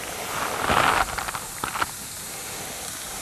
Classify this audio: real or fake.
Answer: real